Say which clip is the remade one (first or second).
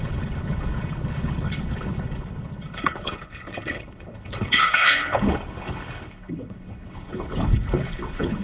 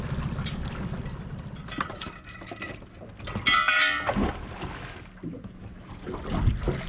first